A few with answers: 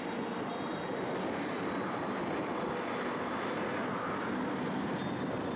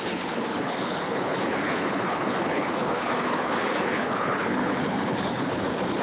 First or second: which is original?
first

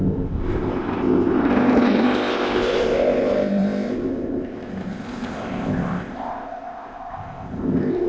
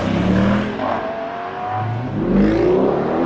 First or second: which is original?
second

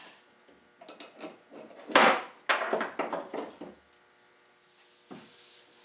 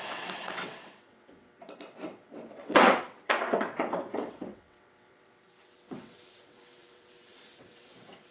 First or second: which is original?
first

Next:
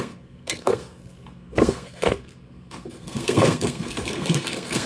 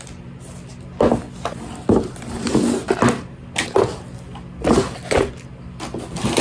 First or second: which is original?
second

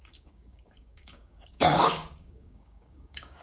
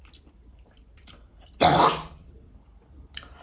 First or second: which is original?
second